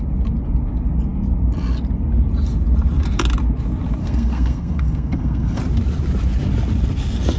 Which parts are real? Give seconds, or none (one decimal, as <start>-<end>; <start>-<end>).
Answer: 0.0-4.0; 5.6-7.4